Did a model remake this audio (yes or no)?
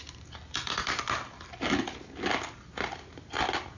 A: no